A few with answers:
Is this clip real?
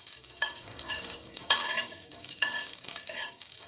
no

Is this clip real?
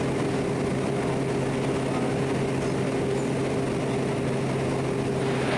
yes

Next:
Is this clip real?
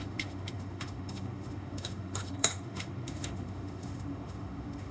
no